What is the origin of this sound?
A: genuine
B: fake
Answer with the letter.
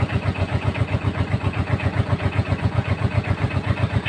B